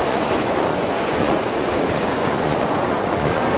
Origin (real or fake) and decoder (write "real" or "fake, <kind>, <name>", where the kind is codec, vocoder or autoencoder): fake, vocoder, Vocos